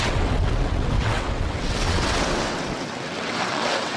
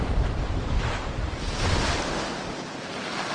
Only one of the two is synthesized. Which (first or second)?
first